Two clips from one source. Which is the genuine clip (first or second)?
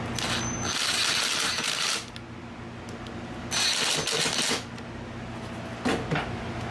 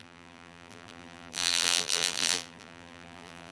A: first